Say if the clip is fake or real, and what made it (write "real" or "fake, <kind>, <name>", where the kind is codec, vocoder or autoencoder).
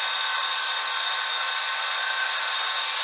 real